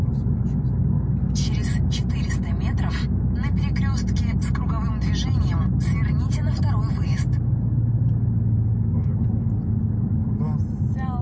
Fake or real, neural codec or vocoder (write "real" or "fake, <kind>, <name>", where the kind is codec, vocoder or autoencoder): real